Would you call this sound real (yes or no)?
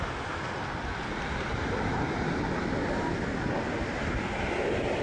yes